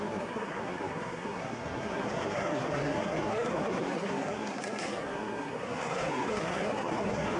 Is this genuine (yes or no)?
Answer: no